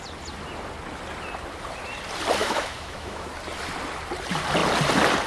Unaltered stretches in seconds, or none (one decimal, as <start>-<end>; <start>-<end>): 0.0-2.4; 3.3-5.3